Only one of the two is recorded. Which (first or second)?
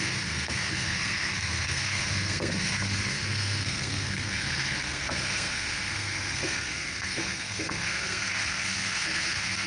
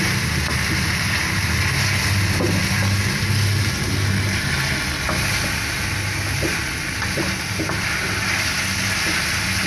second